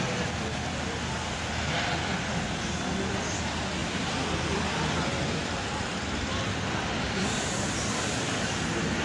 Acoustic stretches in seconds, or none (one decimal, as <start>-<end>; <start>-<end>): 0.0-3.8